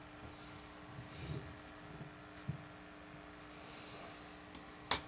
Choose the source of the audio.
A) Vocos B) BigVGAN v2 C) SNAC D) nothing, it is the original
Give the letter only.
D